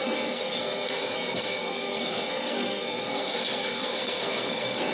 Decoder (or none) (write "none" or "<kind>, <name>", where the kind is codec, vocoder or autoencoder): codec, SNAC